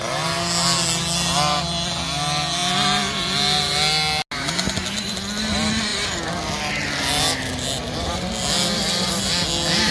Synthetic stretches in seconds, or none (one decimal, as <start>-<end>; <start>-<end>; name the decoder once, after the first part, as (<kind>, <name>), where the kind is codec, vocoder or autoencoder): none